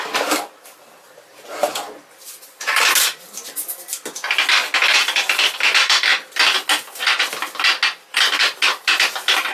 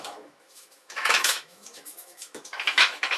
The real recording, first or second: first